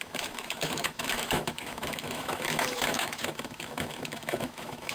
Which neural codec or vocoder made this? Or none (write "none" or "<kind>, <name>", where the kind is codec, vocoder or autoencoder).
autoencoder, DAC-VAE